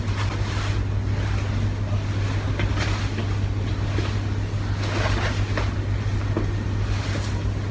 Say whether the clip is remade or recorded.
recorded